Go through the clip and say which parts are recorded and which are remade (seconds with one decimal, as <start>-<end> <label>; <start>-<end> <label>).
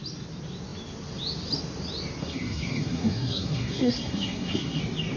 0.0-2.2 recorded; 2.2-4.8 remade; 4.8-5.2 recorded